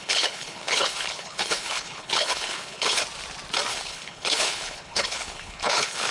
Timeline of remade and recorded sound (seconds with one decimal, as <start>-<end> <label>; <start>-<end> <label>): 0.0-3.0 remade; 3.0-3.7 recorded; 3.7-6.1 remade